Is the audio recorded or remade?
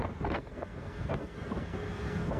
remade